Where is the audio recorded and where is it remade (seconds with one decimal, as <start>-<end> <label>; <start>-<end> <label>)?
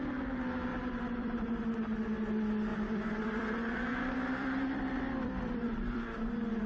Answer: 0.0-0.7 recorded; 0.7-1.6 remade; 1.6-2.7 recorded; 2.7-6.3 remade; 6.3-6.7 recorded